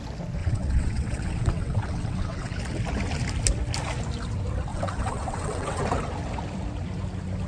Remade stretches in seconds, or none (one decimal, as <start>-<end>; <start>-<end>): 0.4-2.5; 4.7-5.8